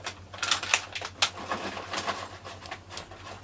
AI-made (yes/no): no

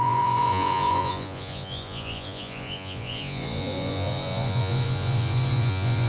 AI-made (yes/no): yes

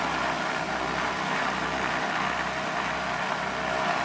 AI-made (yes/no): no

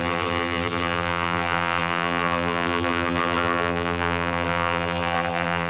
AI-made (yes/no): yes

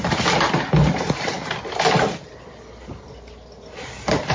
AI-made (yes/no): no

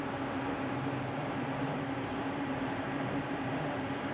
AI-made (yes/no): yes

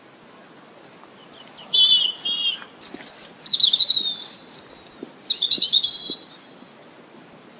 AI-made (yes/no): no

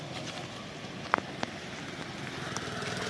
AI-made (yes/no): no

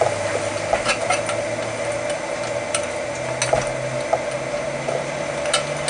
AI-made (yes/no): no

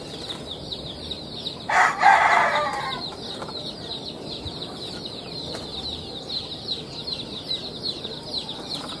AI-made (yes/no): yes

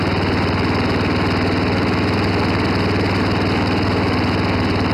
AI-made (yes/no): no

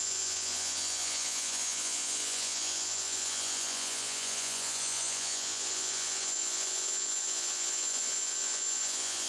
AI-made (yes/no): yes